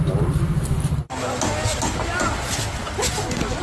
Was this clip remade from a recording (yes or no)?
no